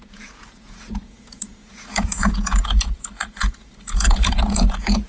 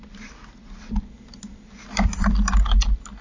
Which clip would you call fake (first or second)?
first